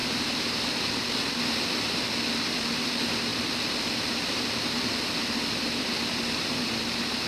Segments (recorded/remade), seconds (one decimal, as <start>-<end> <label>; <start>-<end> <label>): 0.0-0.9 remade; 0.9-7.3 recorded